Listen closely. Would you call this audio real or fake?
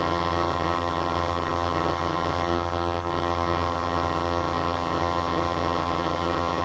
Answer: fake